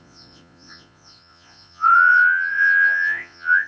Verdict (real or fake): fake